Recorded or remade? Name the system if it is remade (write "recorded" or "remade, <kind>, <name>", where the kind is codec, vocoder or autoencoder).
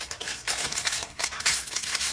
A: remade, codec, SNAC